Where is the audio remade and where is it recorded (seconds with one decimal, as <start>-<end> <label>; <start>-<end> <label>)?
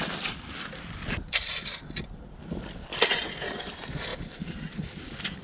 0.0-5.4 recorded